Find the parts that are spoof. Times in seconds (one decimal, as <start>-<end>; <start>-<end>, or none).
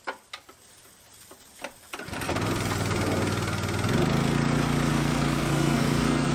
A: 4.9-6.3